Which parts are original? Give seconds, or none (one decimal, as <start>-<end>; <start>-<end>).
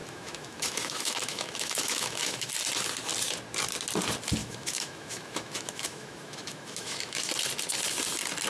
2.5-4.4; 7.3-8.5